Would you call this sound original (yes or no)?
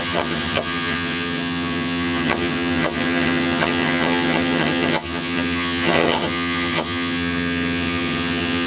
no